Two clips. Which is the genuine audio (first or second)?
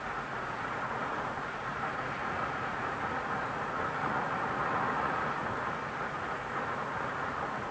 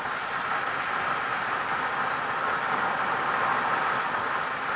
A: second